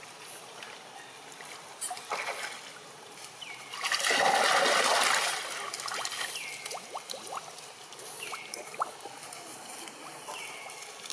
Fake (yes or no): no